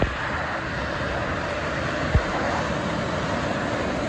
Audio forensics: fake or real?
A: real